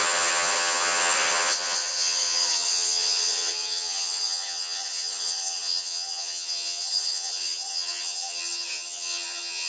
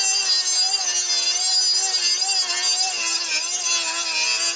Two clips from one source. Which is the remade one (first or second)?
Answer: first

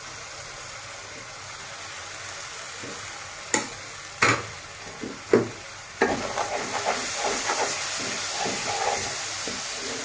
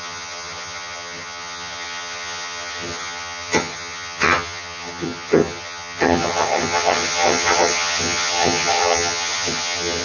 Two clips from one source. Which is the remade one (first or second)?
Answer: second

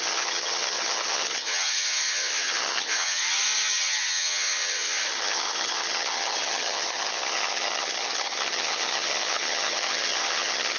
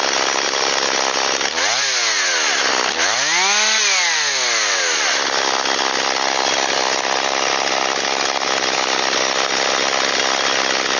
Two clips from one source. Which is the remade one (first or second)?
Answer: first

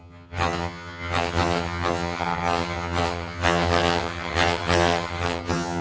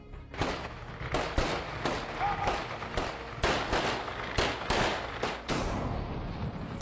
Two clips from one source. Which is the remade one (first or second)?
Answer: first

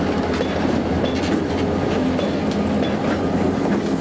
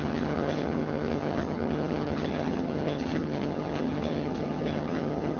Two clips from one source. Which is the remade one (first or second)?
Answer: second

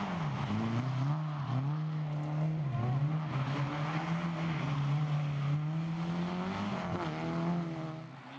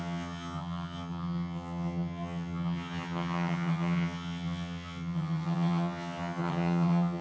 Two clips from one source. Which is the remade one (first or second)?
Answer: second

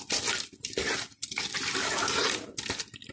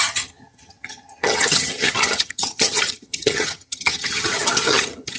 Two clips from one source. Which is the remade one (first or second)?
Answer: second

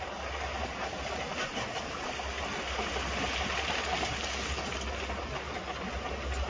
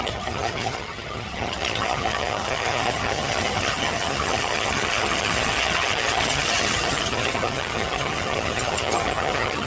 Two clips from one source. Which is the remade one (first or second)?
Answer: second